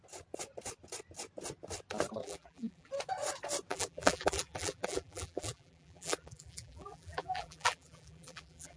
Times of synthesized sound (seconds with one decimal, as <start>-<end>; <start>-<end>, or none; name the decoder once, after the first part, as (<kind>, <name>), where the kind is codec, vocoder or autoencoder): 2.2-2.9 (vocoder, BigVGAN v2); 3.7-8.8